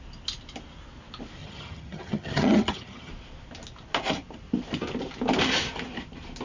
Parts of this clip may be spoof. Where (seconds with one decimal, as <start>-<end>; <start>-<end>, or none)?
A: 1.4-3.1